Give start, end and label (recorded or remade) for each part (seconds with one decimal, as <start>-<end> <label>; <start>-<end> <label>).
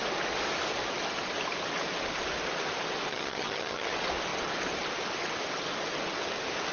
0.0-3.1 recorded; 3.1-3.9 remade; 3.9-6.7 recorded